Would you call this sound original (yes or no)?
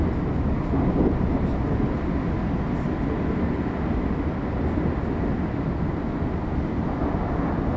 yes